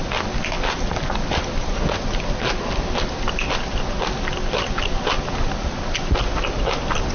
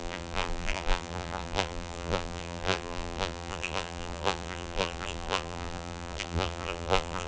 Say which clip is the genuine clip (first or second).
first